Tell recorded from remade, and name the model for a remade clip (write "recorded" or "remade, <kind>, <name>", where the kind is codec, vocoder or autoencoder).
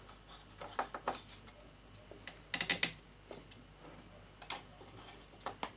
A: recorded